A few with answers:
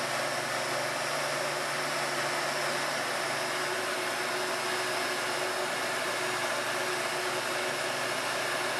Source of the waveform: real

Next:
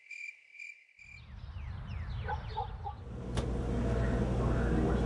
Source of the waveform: real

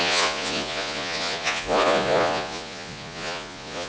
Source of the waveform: fake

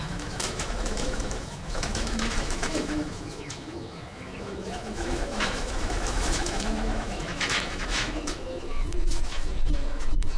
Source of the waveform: fake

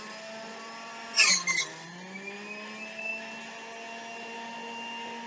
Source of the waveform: real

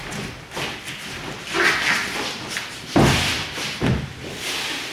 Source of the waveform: real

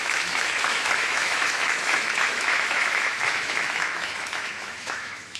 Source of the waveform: fake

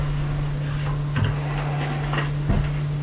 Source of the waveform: real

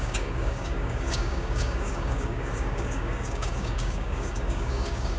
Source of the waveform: fake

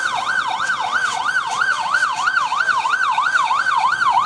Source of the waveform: fake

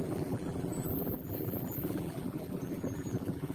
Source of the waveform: fake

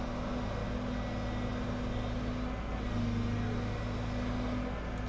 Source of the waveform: real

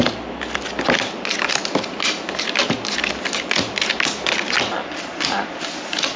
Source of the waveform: real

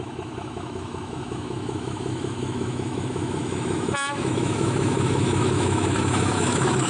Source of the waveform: fake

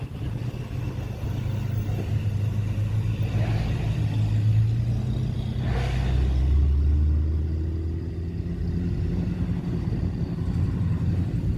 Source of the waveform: real